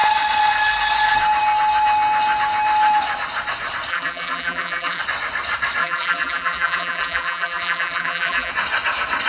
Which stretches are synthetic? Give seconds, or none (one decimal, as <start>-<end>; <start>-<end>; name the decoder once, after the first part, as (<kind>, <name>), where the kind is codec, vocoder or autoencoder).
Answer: 3.9-5.0 (vocoder, BigVGAN v2); 5.8-8.5

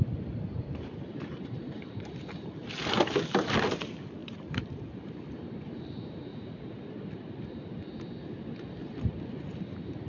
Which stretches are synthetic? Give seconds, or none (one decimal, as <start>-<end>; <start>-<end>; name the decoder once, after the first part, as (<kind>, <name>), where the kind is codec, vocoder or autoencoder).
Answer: 0.0-6.3 (vocoder, BigVGAN v2)

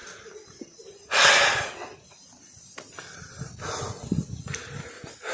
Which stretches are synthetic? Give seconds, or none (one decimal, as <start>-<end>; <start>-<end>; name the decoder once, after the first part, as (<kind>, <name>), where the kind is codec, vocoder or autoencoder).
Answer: none

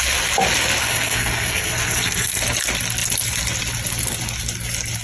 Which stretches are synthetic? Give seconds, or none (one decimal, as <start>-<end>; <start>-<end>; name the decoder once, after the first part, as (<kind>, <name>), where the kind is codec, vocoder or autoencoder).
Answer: 0.8-2.4 (codec, SNAC)

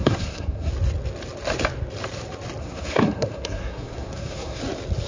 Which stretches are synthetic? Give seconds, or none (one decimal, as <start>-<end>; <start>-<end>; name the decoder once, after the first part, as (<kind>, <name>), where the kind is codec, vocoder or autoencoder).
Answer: 0.0-0.7 (codec, SNAC); 2.6-4.6

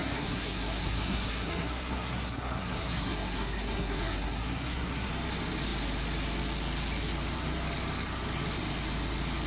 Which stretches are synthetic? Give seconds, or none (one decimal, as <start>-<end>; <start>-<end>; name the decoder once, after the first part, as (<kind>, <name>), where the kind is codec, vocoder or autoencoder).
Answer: 0.0-5.1 (codec, SNAC)